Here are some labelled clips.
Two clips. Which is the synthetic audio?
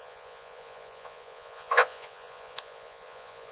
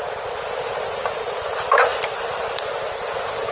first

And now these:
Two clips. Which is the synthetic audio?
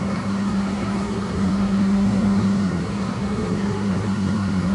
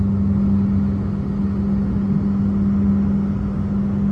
first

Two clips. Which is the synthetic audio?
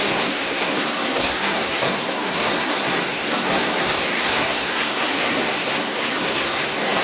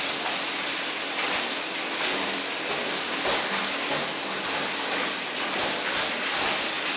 first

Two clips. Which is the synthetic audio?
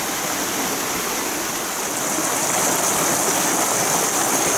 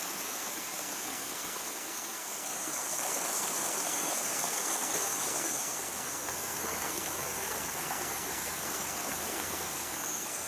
second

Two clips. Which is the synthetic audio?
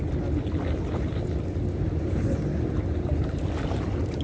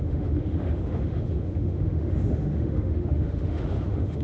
second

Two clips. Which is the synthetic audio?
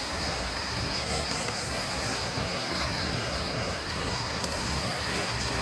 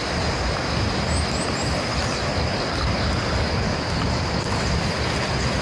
first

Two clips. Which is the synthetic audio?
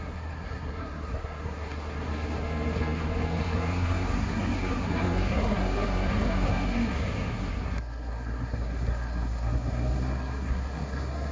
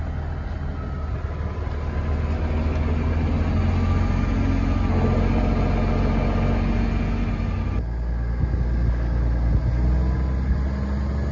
first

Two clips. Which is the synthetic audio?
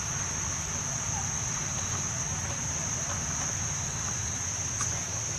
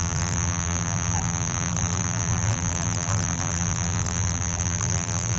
second